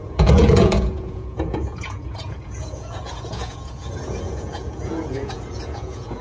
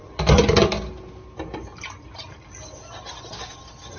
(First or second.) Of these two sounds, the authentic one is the second